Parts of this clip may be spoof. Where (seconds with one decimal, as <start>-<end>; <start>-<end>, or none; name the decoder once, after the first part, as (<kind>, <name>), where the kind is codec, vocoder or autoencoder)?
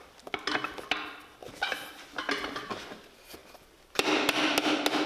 none